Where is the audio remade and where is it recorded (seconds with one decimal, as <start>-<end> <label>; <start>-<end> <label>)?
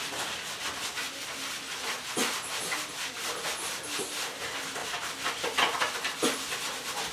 0.0-2.2 recorded; 2.2-4.0 remade; 4.0-4.8 recorded; 4.8-5.8 remade; 5.8-7.1 recorded